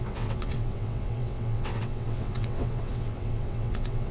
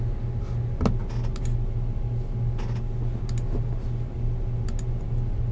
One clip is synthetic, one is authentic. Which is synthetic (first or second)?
first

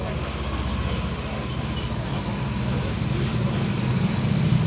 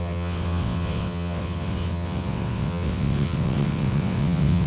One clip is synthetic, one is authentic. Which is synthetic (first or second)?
second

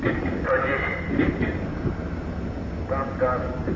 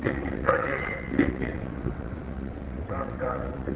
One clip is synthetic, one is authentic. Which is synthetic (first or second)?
second